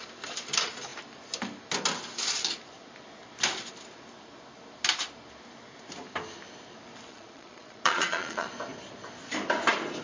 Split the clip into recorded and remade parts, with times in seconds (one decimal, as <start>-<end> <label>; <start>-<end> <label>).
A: 0.0-7.1 recorded; 7.1-8.5 remade; 8.5-10.0 recorded